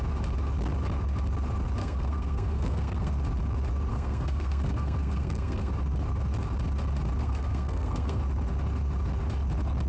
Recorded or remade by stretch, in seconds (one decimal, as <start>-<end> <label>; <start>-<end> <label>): 0.0-1.8 recorded; 1.8-3.1 remade; 3.1-3.9 recorded; 3.9-5.7 remade; 5.7-7.2 recorded; 7.2-8.2 remade; 8.2-9.9 recorded